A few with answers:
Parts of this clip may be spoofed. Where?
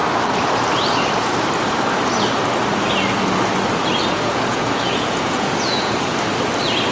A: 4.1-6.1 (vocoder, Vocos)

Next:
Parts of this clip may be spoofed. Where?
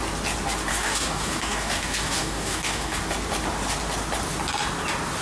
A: 0.7-3.0 (codec, DAC)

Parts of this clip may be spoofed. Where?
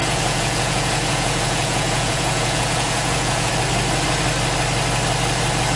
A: 0.0-3.5 (vocoder, Vocos)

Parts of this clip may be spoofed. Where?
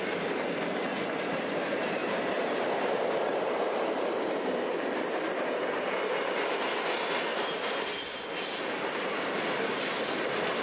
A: 2.0-4.8 (vocoder, BigVGAN v2)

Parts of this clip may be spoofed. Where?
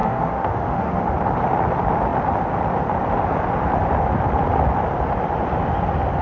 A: 0.0-1.1 (autoencoder, DAC-VAE)